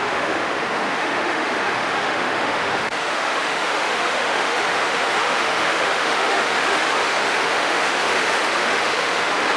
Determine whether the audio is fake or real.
fake